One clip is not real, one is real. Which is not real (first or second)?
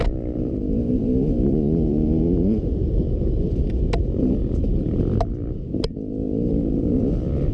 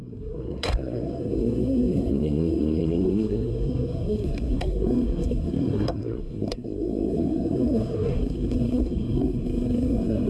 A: second